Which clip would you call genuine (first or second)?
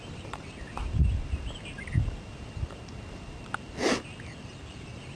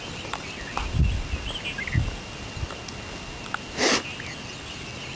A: second